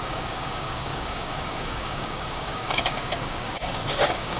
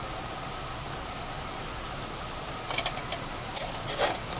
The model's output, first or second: first